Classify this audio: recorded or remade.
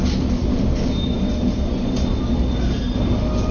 recorded